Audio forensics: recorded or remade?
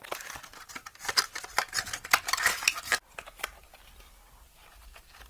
recorded